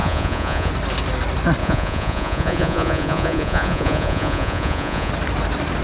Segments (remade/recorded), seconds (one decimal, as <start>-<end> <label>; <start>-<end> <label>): 0.0-0.7 remade; 0.7-1.6 recorded; 1.6-5.1 remade; 5.1-5.8 recorded